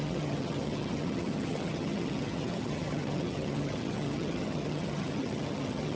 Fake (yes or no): yes